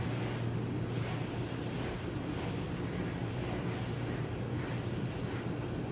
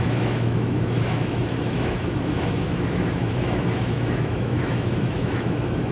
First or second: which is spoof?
second